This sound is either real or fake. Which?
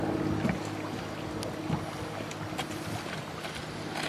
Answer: real